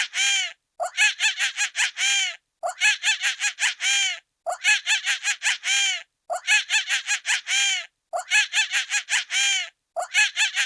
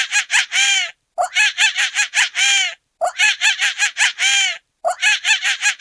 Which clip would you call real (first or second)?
first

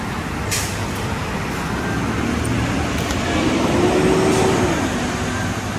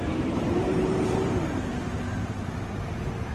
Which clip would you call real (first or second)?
first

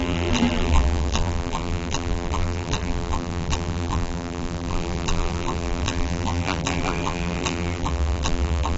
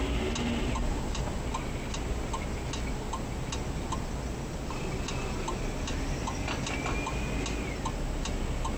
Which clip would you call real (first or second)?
second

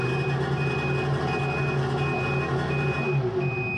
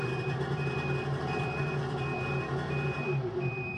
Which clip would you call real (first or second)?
first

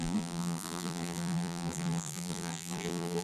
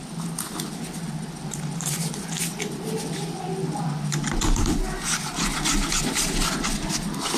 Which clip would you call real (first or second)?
second